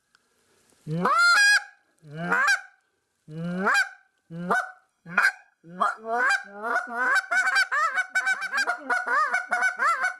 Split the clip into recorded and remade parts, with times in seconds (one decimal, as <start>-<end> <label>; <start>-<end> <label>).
0.0-4.9 recorded; 4.9-6.2 remade; 6.2-10.2 recorded